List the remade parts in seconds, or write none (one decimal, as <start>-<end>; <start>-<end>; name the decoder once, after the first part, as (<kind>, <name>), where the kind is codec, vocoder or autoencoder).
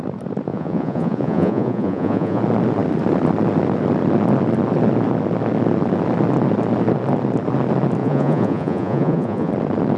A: 0.5-2.4 (vocoder, Vocos); 8.0-9.5